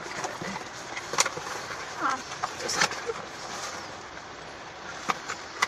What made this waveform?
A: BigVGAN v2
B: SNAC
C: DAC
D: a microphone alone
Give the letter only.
A